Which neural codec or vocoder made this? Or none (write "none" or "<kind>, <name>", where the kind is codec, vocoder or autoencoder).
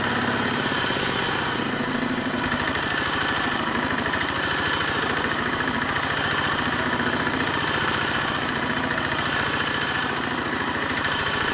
vocoder, BigVGAN v2